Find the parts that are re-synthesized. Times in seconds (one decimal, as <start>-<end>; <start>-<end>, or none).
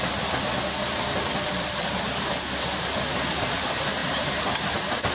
0.0-5.1